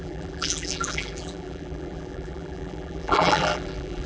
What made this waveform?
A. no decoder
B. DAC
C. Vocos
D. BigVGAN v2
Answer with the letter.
D